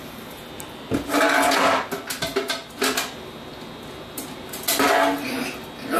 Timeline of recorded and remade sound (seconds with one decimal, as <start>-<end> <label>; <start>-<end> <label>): 0.0-6.0 recorded